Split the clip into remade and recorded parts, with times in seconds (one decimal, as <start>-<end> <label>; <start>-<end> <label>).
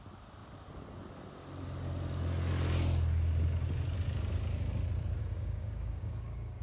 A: 0.0-5.2 recorded; 5.2-6.6 remade